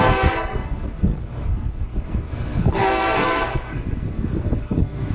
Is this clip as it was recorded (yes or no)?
no